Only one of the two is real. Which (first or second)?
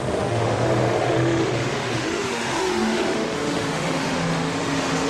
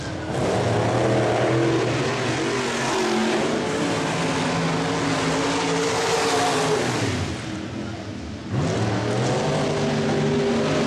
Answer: second